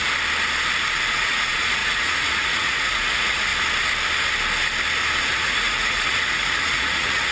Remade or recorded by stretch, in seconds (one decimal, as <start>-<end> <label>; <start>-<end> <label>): 0.0-1.1 recorded; 1.1-3.5 remade; 3.5-5.2 recorded; 5.2-7.3 remade